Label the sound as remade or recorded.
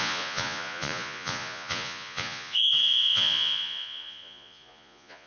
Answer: remade